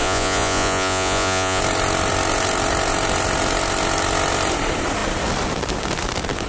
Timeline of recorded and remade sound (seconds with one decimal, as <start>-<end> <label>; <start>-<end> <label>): 0.0-1.6 remade; 1.6-6.5 recorded